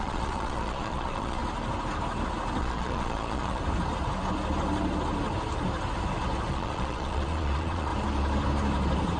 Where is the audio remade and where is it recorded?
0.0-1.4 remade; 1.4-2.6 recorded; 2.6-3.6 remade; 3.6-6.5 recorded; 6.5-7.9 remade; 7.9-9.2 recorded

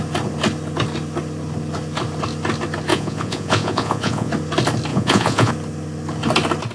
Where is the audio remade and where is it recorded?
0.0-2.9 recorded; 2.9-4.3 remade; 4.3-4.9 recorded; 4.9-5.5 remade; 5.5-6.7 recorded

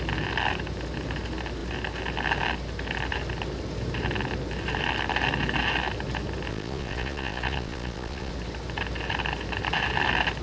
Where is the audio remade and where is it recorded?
0.0-6.5 recorded; 6.5-8.3 remade; 8.3-10.4 recorded